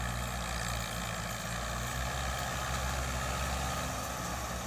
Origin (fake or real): real